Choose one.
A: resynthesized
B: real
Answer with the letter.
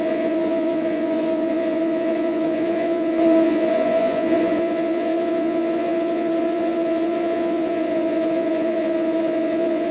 A